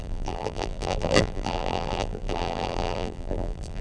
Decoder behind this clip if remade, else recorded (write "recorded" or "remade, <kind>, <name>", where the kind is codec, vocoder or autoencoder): remade, vocoder, BigVGAN v2